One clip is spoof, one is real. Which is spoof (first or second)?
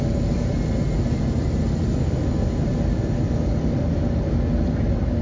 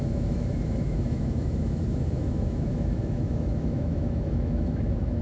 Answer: second